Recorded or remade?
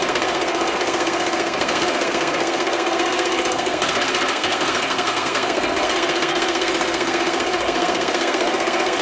remade